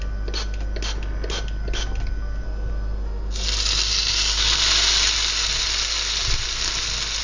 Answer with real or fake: real